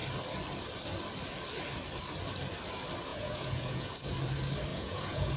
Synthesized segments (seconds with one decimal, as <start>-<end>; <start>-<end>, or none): 3.1-3.9; 4.7-5.4